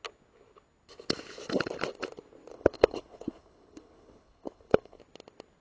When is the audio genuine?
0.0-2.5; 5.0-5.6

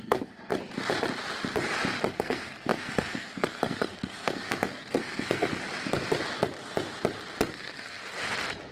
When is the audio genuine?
0.5-2.1; 5.5-7.5; 8.0-8.7

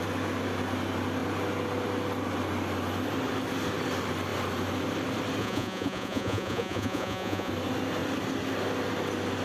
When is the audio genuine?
0.0-5.4; 7.5-9.4

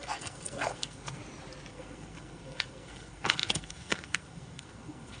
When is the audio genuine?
1.2-1.7

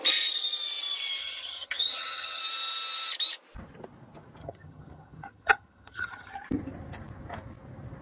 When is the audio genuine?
0.0-1.2; 2.4-4.4; 6.4-8.0

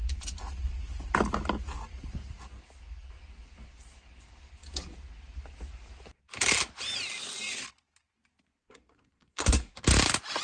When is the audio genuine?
0.0-8.6; 9.7-10.4